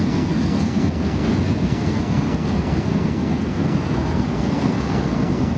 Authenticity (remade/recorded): remade